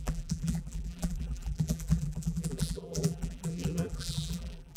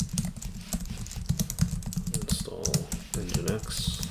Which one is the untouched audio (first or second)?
second